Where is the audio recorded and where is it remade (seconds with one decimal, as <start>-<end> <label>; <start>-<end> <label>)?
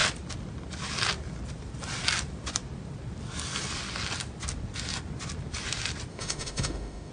0.0-6.1 recorded; 6.1-7.1 remade